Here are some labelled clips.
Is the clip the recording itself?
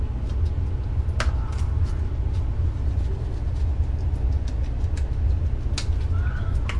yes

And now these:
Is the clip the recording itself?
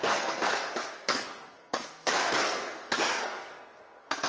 no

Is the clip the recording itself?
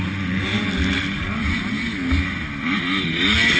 yes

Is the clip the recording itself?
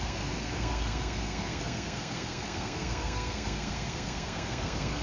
no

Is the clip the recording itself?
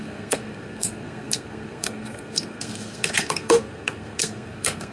no